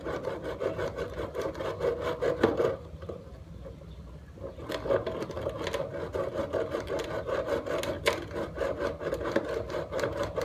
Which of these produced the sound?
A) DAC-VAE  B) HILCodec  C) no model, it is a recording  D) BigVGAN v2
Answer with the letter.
C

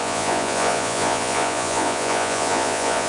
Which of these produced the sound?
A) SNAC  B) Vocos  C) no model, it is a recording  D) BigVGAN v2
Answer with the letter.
B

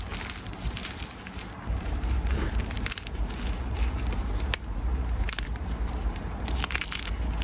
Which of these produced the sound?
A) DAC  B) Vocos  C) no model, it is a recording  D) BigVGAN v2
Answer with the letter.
D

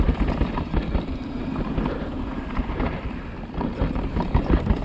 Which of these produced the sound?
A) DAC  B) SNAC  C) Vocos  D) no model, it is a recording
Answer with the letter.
D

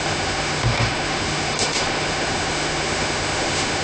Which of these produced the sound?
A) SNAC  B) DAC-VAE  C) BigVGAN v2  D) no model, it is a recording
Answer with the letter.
B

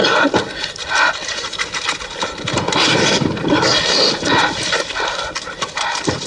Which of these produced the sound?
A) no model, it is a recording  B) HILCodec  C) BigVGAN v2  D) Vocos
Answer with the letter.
A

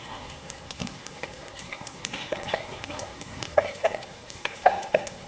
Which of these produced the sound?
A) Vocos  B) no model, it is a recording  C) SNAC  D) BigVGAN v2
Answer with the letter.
C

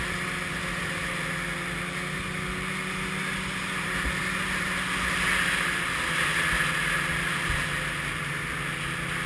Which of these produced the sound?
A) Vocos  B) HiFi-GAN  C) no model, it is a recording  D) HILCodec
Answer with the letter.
C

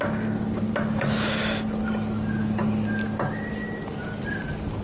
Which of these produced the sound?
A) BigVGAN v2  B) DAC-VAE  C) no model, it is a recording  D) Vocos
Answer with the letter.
C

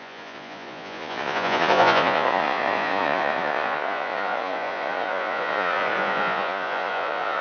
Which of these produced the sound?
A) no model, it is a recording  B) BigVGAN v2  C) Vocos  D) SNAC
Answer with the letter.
C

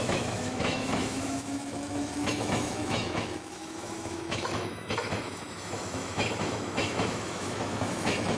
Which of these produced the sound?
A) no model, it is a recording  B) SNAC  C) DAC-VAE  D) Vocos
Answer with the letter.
C